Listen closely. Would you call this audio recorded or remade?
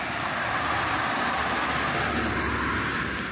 recorded